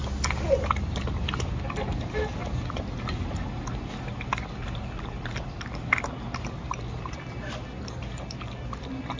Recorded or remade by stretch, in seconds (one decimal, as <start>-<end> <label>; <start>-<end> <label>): 0.0-9.2 recorded